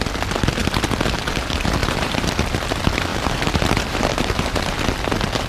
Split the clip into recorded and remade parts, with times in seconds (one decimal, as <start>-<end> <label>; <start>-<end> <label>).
0.0-1.8 recorded; 1.8-2.3 remade; 2.3-3.1 recorded; 3.1-4.9 remade; 4.9-5.5 recorded